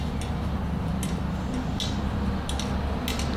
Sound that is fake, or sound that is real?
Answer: real